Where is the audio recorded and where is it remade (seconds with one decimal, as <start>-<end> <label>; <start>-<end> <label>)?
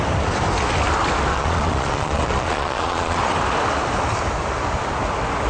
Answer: 0.0-1.3 recorded; 1.3-3.2 remade; 3.2-5.5 recorded